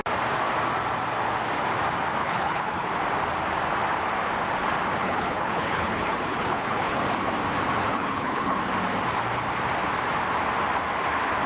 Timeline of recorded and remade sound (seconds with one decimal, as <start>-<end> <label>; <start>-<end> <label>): 0.0-2.2 recorded; 2.2-2.9 remade; 2.9-5.0 recorded; 5.0-7.0 remade; 7.0-7.8 recorded; 7.8-8.6 remade; 8.6-11.5 recorded